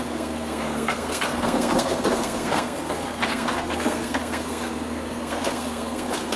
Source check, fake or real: fake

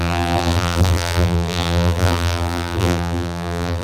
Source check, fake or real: fake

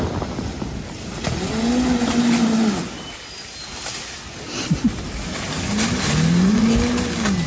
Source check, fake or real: real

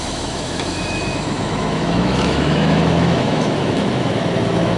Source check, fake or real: fake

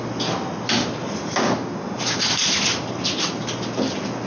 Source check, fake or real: real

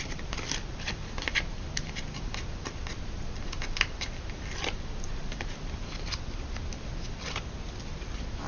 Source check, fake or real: fake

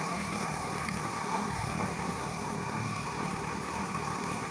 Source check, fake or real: fake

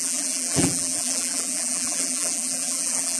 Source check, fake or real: fake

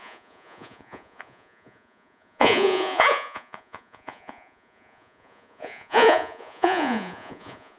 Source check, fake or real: fake